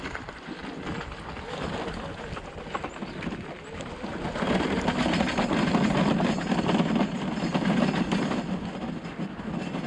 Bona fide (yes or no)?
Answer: yes